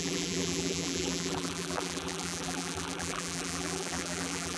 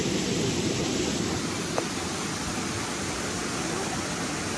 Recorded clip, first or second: second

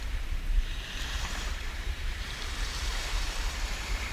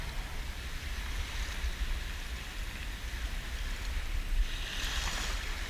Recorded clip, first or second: second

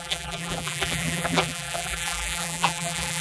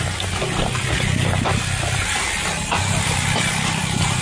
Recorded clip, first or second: second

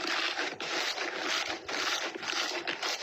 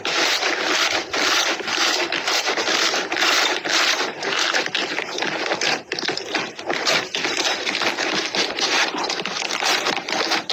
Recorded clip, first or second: first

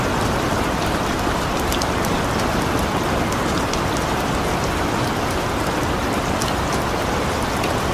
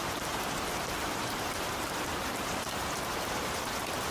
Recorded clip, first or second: first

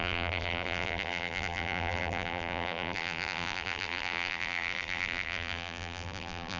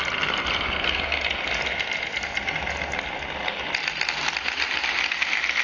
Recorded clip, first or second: second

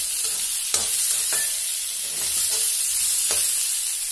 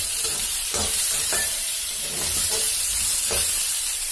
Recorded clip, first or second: first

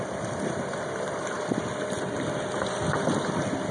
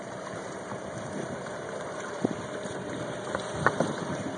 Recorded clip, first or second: first